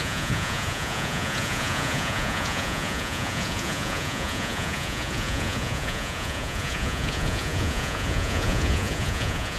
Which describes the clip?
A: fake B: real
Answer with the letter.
A